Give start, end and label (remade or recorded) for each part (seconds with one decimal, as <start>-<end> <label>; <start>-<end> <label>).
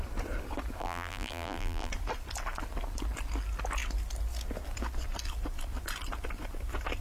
0.0-0.8 recorded; 0.8-1.9 remade; 1.9-7.0 recorded